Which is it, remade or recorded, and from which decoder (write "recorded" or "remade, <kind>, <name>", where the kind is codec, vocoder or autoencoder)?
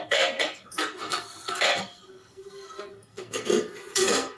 remade, codec, SNAC